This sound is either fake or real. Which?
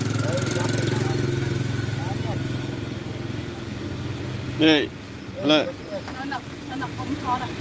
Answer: real